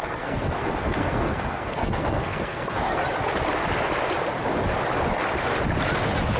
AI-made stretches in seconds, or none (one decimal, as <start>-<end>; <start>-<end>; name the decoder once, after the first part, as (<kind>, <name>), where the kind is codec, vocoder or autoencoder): 0.0-3.0 (codec, SNAC)